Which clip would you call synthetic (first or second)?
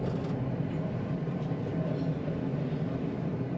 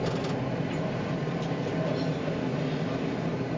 first